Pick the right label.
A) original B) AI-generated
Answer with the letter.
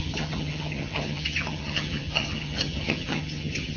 B